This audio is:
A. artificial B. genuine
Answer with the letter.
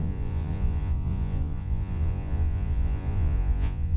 A